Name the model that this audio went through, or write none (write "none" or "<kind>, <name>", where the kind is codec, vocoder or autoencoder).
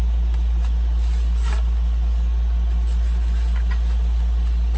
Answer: none